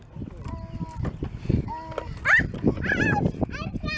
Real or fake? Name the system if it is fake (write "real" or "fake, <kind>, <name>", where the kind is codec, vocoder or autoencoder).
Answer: real